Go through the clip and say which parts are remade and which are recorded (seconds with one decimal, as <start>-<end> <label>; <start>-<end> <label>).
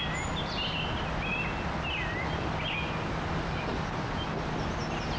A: 0.0-5.2 recorded